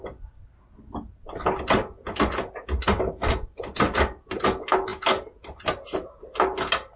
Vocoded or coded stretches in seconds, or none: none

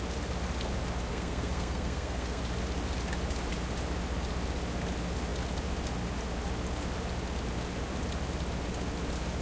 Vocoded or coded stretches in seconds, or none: 1.1-2.4 (codec, SNAC)

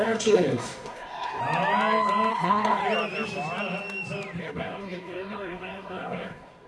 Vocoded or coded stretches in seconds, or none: 0.0-1.4 (codec, SNAC); 2.3-2.8; 4.4-6.7

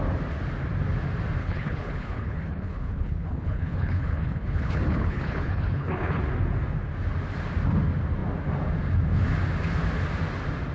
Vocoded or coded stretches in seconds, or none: 1.4-6.2 (codec, HILCodec)

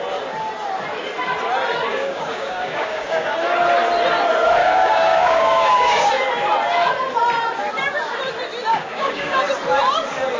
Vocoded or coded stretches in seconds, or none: 1.9-3.3 (codec, DAC); 4.6-6.1; 8.7-9.4

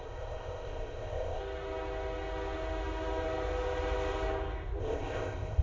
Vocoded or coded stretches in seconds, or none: 0.0-1.4 (codec, ZipCodec); 4.8-5.6

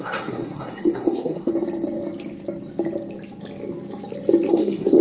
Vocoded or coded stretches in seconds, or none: 0.0-1.5 (codec, SNAC); 4.5-5.0

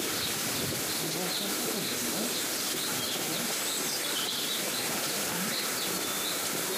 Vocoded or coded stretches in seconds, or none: 1.9-5.5 (vocoder, BigVGAN v2)